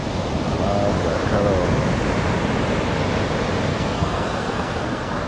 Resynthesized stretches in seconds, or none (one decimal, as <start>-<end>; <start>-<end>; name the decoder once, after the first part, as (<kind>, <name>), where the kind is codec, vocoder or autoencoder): 3.7-5.3 (codec, SNAC)